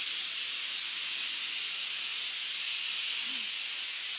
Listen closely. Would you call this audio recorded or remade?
recorded